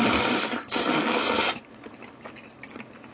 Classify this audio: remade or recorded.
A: recorded